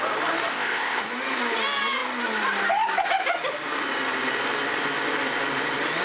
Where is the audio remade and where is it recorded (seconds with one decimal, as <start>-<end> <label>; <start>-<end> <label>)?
0.0-0.5 recorded; 0.5-1.0 remade; 1.0-6.0 recorded